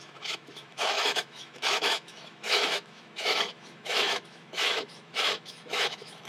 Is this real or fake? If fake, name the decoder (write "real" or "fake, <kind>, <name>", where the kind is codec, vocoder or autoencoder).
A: fake, autoencoder, DAC-VAE